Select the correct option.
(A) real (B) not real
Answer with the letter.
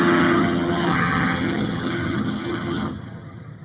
B